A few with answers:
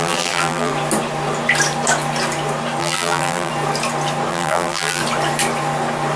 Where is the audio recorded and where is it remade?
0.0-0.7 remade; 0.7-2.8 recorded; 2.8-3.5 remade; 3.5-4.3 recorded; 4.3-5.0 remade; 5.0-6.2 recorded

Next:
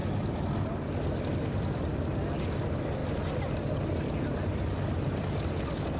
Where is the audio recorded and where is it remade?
0.0-6.0 recorded

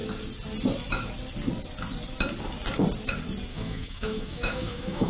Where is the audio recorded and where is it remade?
0.0-3.5 recorded; 3.5-5.1 remade

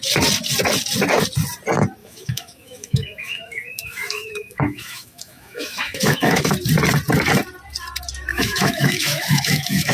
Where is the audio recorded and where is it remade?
0.0-2.0 recorded; 2.0-6.5 remade; 6.5-8.3 recorded; 8.3-9.9 remade

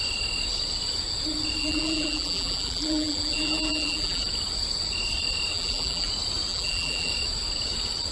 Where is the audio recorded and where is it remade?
0.0-1.6 recorded; 1.6-4.2 remade; 4.2-5.5 recorded; 5.5-6.1 remade; 6.1-6.5 recorded; 6.5-7.1 remade; 7.1-8.1 recorded